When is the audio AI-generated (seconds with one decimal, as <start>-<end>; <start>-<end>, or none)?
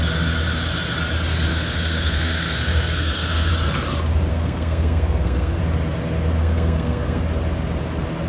1.5-3.5; 4.3-5.6; 6.4-7.2